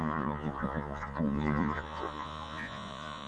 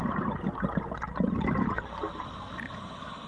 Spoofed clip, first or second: first